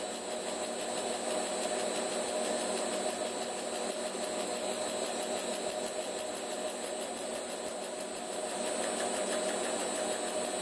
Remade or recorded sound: recorded